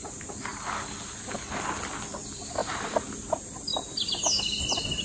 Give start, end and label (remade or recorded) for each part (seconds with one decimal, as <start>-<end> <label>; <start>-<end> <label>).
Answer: 0.0-5.0 recorded